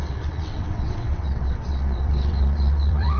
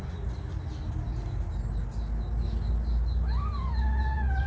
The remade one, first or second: first